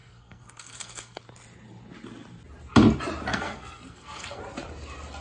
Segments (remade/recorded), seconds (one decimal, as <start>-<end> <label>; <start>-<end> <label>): 0.0-1.2 remade; 1.2-3.3 recorded; 3.3-4.4 remade; 4.4-5.2 recorded